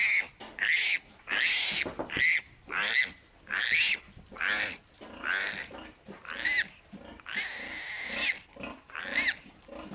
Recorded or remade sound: recorded